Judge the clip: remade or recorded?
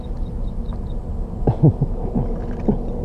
recorded